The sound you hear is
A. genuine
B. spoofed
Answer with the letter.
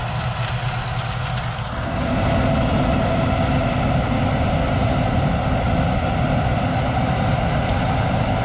A